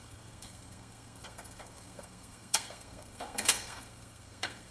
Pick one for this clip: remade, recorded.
remade